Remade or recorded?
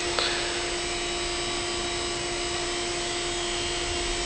recorded